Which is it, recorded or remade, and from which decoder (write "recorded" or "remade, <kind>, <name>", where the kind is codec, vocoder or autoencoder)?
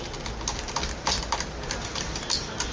recorded